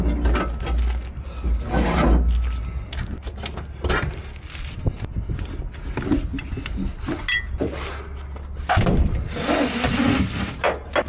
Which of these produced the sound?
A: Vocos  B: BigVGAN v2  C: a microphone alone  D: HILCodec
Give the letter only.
C